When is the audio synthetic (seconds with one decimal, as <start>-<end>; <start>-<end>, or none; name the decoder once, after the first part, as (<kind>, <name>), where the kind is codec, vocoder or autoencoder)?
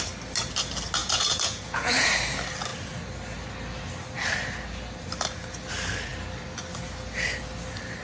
1.0-2.1 (vocoder, Vocos)